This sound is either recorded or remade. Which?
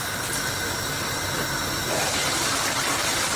recorded